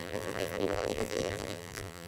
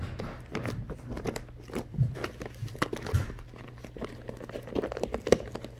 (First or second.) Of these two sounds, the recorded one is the second